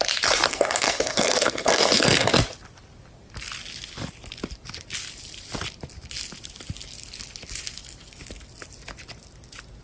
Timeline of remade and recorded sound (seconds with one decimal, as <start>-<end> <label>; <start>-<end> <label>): 0.0-0.5 recorded; 0.5-2.3 remade; 2.3-9.8 recorded

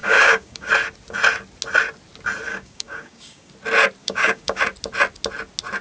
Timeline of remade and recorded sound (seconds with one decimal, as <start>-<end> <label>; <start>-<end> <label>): 0.0-0.7 remade; 0.7-2.5 recorded; 2.5-3.5 remade; 3.5-4.0 recorded; 4.0-4.6 remade; 4.6-5.8 recorded

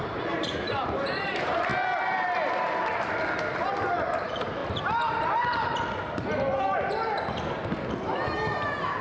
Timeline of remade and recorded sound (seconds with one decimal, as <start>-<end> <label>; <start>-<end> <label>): 0.0-1.7 remade; 1.7-3.9 recorded; 3.9-4.6 remade; 4.6-5.2 recorded; 5.2-5.7 remade; 5.7-9.0 recorded

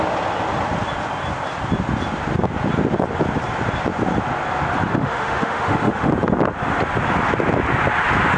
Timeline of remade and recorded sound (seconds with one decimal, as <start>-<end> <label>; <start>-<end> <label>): 0.0-4.9 recorded; 4.9-6.1 remade; 6.1-8.4 recorded

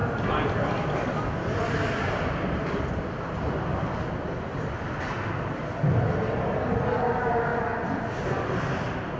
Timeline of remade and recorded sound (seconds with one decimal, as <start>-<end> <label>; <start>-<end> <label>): 0.0-9.2 recorded

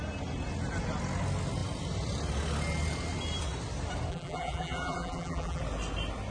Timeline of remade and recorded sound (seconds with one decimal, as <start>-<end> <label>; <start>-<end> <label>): 0.0-4.1 recorded; 4.1-5.6 remade; 5.6-6.3 recorded

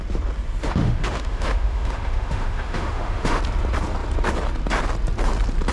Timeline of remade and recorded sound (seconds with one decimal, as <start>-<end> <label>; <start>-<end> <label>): 0.0-0.6 recorded; 0.6-3.4 remade; 3.4-5.7 recorded

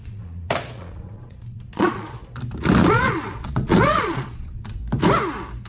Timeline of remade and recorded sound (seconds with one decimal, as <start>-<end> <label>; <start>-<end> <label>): 0.0-2.2 remade; 2.2-2.8 recorded; 2.8-4.8 remade; 4.8-5.7 recorded